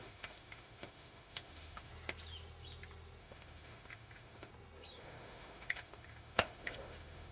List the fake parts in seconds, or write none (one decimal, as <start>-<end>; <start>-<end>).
0.0-1.9; 3.2-4.5; 5.0-7.3